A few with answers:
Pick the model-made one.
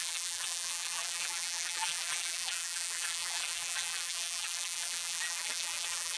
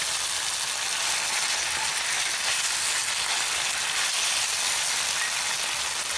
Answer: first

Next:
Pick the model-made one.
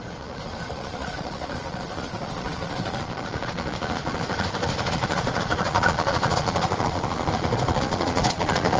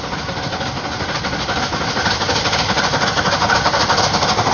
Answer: first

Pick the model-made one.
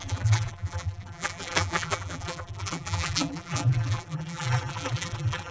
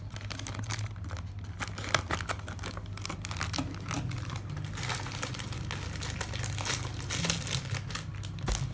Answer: first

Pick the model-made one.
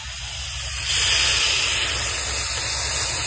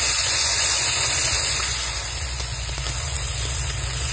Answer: second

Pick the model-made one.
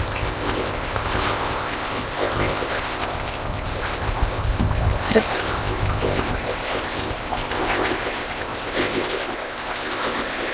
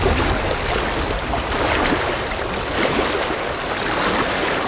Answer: first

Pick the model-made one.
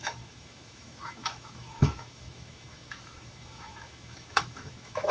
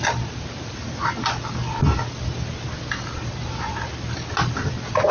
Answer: first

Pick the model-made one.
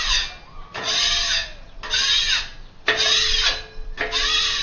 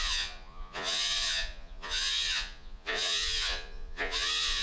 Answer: second